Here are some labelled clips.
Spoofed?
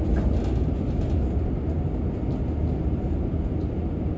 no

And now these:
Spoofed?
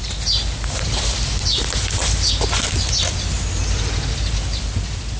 no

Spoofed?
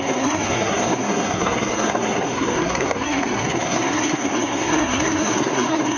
yes